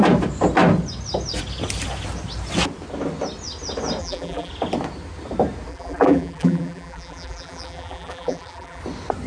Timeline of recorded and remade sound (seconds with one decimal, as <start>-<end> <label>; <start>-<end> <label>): 0.0-4.0 recorded; 4.0-4.5 remade; 4.5-5.7 recorded; 5.7-8.8 remade; 8.8-9.3 recorded